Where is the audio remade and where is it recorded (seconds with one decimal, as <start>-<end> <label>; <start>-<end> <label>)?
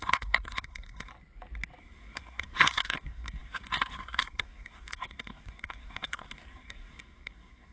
0.0-1.1 remade; 1.1-1.8 recorded; 1.8-7.7 remade